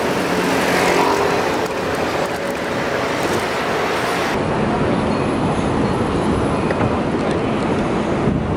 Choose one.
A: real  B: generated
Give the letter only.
A